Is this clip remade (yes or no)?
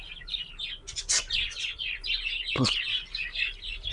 no